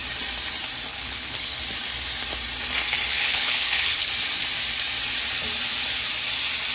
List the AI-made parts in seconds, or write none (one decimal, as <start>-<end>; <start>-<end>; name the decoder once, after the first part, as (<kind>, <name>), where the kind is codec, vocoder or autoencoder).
0.9-1.6 (codec, HILCodec); 3.1-4.1